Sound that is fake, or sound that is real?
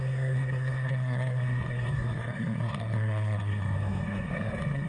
fake